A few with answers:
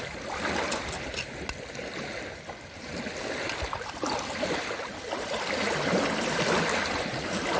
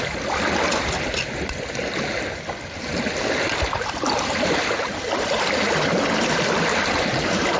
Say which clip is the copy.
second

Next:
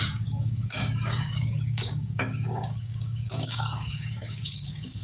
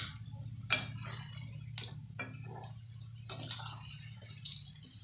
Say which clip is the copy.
first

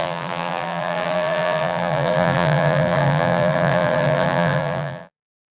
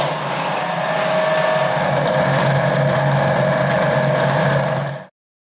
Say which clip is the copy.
first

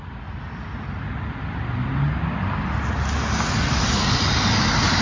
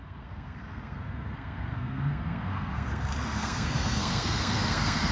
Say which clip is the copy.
second